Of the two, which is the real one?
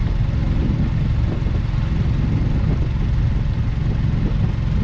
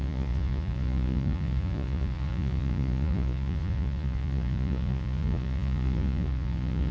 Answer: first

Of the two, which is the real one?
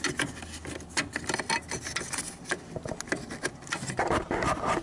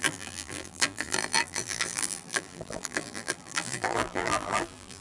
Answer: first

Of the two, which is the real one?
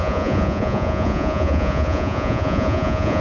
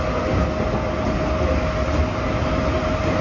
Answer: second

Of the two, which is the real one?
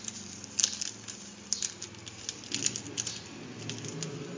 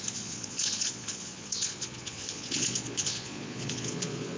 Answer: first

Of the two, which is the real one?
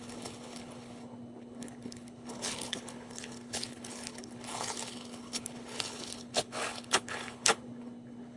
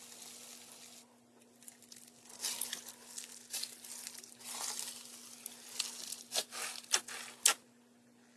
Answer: second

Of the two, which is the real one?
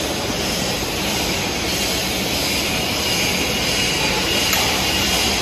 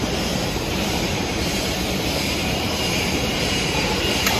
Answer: first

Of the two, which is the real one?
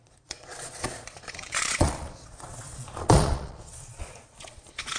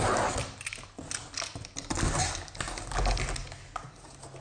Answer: second